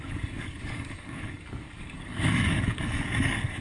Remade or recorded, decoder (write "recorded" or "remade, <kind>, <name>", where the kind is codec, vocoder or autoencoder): remade, codec, DAC